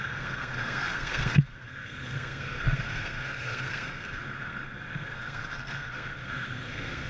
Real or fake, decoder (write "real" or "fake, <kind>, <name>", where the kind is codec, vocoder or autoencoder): fake, codec, SNAC